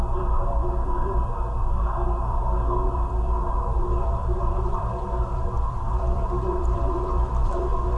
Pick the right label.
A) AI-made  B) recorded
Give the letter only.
A